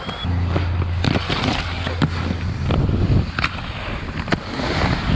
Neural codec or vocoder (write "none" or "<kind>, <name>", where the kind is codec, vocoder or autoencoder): none